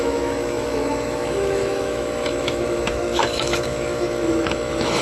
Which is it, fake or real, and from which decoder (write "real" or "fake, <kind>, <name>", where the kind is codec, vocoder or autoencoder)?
fake, autoencoder, DAC-VAE